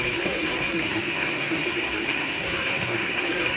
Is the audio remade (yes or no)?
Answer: yes